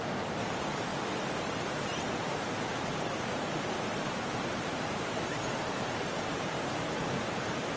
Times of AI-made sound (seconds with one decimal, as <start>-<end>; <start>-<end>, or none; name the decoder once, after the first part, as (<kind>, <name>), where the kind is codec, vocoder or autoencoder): 0.0-0.9 (vocoder, BigVGAN v2); 2.2-7.8